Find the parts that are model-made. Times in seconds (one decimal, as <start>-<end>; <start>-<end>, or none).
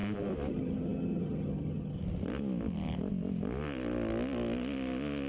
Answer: 0.5-2.0